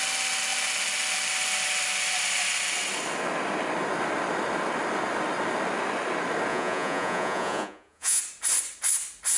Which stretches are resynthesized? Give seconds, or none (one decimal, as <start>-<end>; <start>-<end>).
6.5-8.2